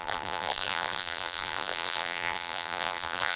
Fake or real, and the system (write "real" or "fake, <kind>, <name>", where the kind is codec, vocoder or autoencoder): fake, vocoder, BigVGAN v2